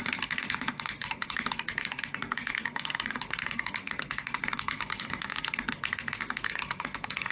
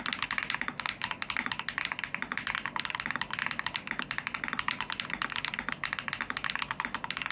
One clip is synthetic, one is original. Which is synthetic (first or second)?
first